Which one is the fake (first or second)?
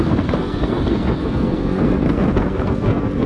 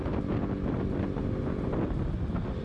first